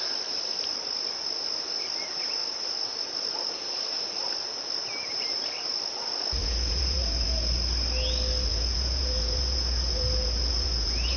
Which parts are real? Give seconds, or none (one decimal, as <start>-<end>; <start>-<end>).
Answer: 0.0-6.4; 7.5-8.5